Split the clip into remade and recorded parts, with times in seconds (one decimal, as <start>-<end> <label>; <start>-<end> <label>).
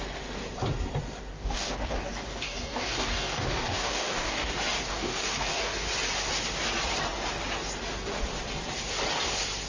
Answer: 0.0-1.3 recorded; 1.3-4.5 remade; 4.5-4.9 recorded; 4.9-5.9 remade; 5.9-9.7 recorded